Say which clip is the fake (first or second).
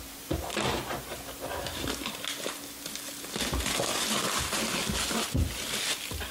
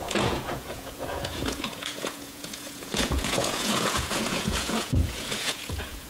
second